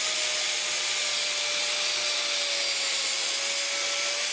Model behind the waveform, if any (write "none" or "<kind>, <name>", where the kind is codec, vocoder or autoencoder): none